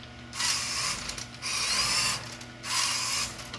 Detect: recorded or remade recorded